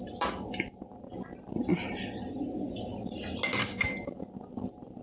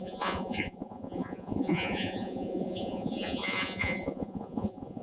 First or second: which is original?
first